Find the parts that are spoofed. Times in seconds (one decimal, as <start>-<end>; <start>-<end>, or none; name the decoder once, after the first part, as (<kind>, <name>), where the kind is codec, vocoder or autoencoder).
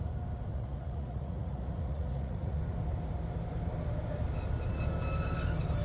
0.5-2.6 (vocoder, Vocos)